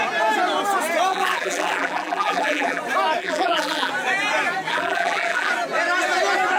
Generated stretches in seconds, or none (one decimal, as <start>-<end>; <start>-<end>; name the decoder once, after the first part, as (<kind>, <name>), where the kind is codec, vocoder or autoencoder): 1.1-2.8 (vocoder, BigVGAN v2); 3.2-3.9; 4.7-5.5